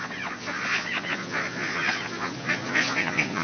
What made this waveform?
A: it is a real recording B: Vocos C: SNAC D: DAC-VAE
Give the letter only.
B